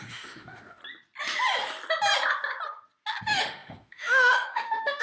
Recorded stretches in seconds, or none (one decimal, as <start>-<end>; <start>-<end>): 0.8-3.2